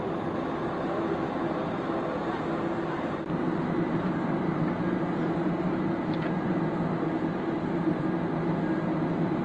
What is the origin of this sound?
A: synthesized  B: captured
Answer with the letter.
B